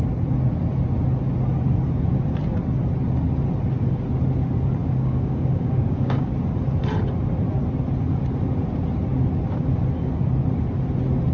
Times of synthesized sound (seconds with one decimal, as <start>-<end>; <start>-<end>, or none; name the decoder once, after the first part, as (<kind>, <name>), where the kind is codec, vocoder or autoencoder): 4.8-6.3 (codec, DAC)